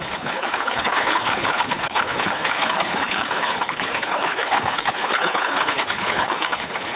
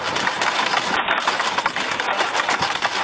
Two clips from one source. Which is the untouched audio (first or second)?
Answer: second